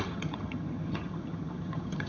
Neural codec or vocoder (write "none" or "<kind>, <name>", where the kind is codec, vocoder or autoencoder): vocoder, HiFi-GAN